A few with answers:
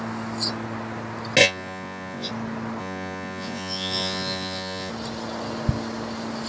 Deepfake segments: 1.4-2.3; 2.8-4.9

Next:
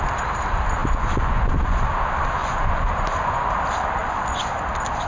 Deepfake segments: 0.8-1.8; 2.4-3.5; 4.0-4.5

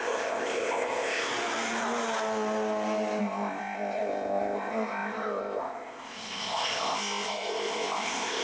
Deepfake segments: 0.0-1.3; 3.2-8.4

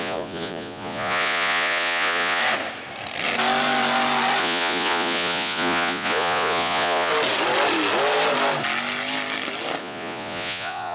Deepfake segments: 0.0-2.4; 4.4-7.1; 9.8-10.9